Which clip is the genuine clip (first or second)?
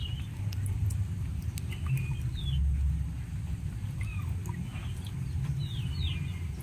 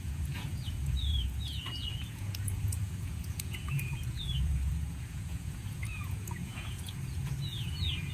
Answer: first